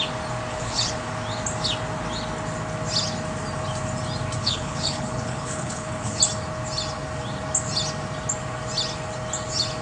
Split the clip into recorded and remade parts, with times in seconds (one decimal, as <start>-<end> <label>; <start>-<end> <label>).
0.0-0.5 recorded; 0.5-1.1 remade; 1.1-4.4 recorded; 4.4-6.2 remade; 6.2-9.8 recorded